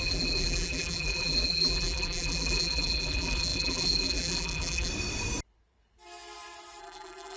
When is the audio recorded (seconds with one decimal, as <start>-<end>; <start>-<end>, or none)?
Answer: 4.9-6.8